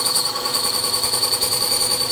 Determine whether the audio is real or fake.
fake